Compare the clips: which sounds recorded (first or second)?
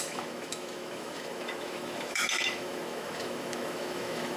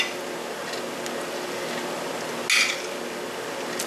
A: second